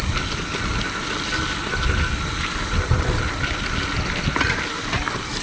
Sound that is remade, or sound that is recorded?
recorded